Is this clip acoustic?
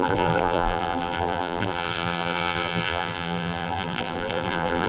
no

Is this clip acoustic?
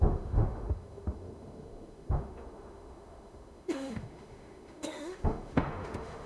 no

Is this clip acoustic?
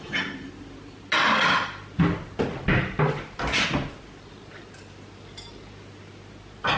yes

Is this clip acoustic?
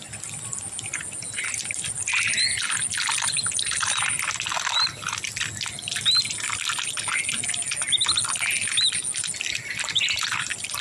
yes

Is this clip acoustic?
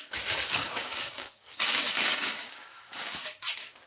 no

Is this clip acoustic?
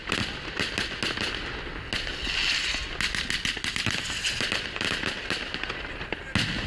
yes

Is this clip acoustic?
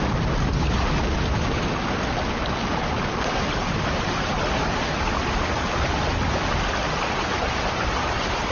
yes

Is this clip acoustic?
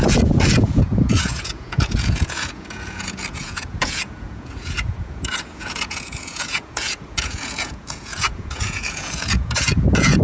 no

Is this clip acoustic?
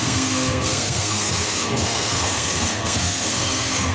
no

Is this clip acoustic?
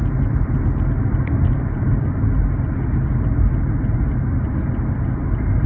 yes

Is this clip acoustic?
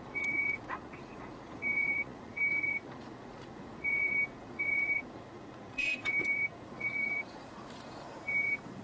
no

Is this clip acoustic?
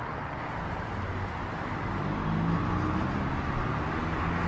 yes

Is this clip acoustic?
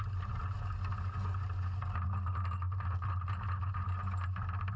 yes